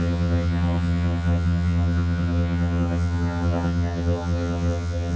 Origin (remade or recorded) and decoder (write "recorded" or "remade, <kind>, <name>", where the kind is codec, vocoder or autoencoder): remade, vocoder, HiFi-GAN